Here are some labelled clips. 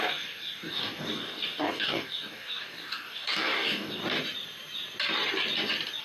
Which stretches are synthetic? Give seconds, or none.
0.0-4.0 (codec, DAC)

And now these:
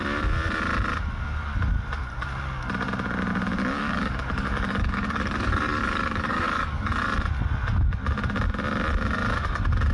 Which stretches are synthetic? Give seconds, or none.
3.6-7.0 (codec, DAC)

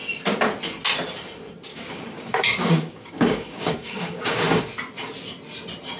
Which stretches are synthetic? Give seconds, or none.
1.7-4.6 (codec, DAC)